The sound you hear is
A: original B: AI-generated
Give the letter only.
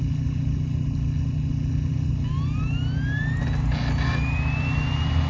A